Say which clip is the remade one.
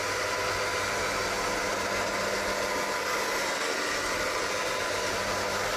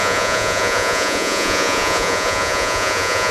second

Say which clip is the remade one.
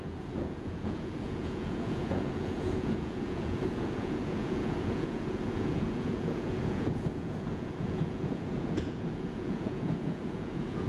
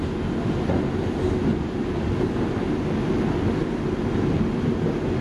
first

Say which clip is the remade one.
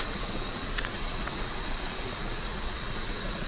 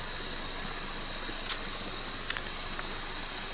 first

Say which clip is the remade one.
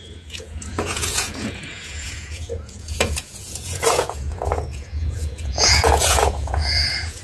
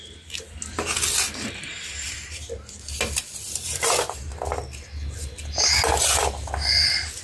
first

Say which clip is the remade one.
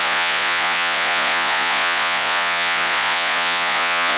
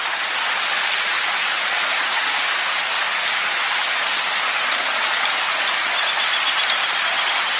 first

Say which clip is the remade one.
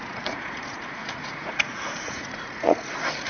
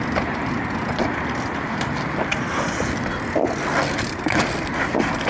first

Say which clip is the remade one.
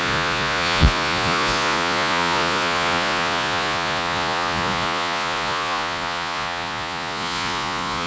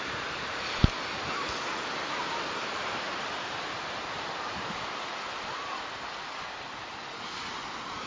first